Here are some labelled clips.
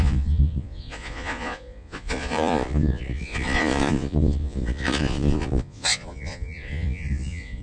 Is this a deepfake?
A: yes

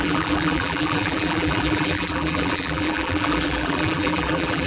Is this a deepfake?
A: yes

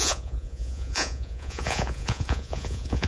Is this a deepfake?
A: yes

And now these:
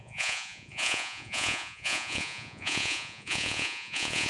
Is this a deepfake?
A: yes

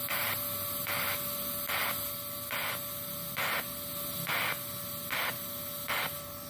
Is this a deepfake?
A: no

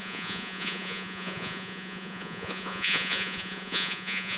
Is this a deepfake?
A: yes